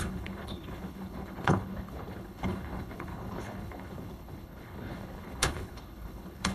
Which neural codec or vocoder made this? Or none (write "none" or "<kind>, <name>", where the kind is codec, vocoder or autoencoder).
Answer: codec, HILCodec